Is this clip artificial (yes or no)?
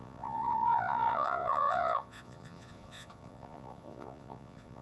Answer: yes